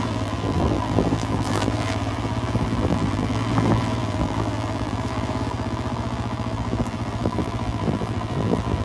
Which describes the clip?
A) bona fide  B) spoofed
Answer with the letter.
B